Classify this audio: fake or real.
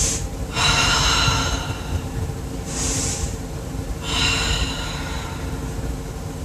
fake